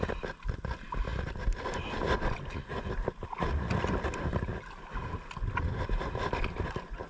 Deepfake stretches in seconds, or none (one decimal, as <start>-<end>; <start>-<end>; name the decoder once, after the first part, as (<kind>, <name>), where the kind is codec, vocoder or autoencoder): none